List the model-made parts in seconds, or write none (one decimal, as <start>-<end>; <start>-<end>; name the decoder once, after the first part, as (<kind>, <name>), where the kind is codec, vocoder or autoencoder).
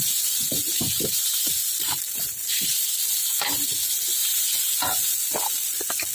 4.2-5.1 (vocoder, Vocos)